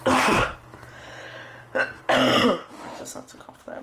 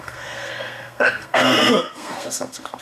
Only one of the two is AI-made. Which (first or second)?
second